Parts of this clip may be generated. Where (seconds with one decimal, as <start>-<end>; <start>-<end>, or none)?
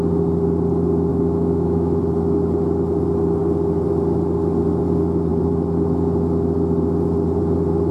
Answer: 1.1-2.0